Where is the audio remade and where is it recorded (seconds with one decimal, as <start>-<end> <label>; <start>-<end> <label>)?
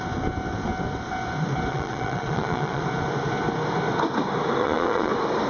0.0-1.7 recorded; 1.7-2.8 remade; 2.8-4.6 recorded; 4.6-5.1 remade; 5.1-5.5 recorded